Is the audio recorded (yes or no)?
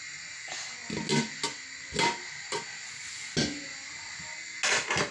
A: yes